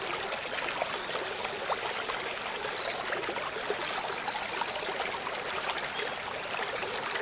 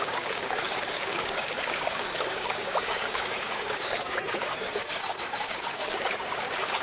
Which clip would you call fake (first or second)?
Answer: second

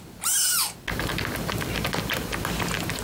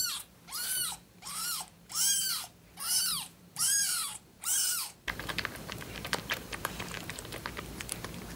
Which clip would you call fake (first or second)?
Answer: second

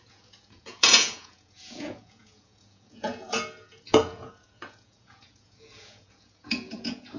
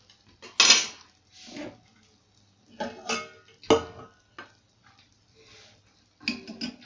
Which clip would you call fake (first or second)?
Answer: first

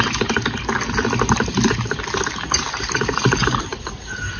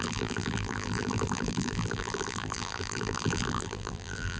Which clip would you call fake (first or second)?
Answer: second